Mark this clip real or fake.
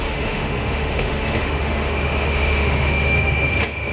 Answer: fake